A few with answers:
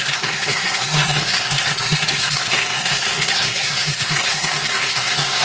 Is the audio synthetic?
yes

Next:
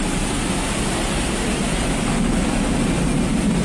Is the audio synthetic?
no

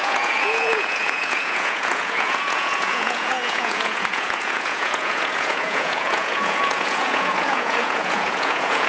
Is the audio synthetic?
yes